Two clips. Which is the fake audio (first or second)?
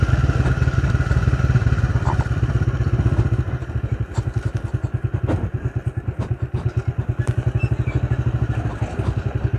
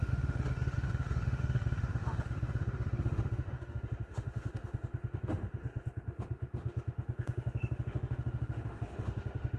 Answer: second